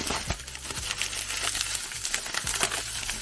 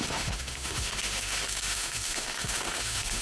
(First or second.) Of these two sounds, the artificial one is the second